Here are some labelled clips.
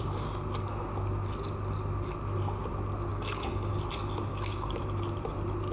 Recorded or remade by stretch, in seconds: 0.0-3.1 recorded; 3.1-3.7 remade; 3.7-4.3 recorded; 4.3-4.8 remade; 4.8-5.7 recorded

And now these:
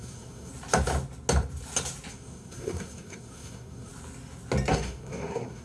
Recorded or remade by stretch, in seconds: 0.0-0.5 remade; 0.5-2.1 recorded; 2.1-3.9 remade; 3.9-4.7 recorded; 4.7-5.6 remade

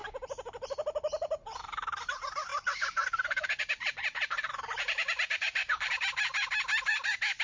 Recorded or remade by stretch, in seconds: 0.0-2.0 remade; 2.0-2.5 recorded; 2.5-5.9 remade; 5.9-7.4 recorded

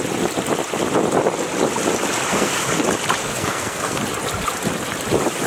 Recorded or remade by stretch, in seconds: 0.0-2.3 recorded; 2.3-2.8 remade; 2.8-3.2 recorded; 3.2-4.0 remade; 4.0-5.5 recorded